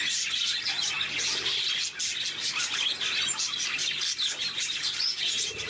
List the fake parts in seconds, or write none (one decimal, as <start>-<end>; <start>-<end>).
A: none